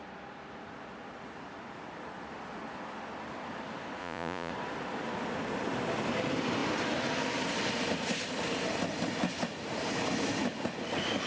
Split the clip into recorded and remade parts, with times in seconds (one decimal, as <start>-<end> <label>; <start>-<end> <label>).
0.0-4.0 recorded; 4.0-4.5 remade; 4.5-11.3 recorded